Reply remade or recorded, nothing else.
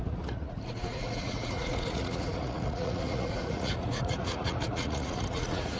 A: remade